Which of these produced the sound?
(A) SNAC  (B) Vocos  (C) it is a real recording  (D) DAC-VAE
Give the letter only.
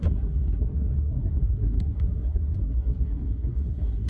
A